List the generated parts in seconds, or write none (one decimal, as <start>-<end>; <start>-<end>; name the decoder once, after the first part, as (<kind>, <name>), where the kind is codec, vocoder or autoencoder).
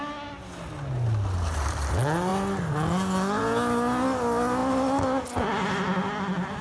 none